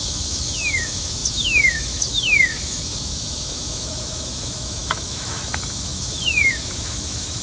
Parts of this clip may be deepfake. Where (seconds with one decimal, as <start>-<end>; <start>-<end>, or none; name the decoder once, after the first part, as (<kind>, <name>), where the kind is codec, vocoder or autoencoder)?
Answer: 0.0-7.4 (autoencoder, DAC-VAE)